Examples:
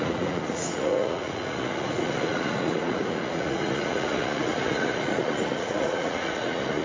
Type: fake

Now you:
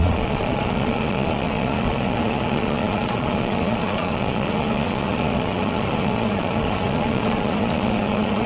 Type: fake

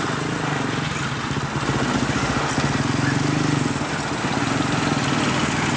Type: real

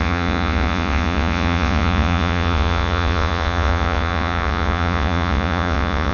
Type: fake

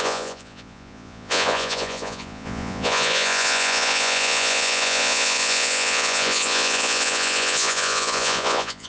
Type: fake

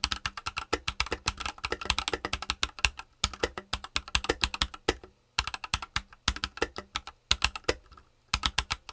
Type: real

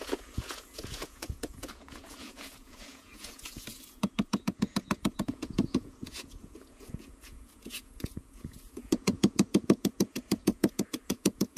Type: fake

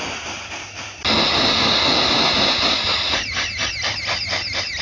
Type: real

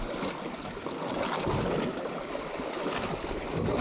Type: real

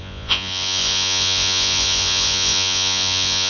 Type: fake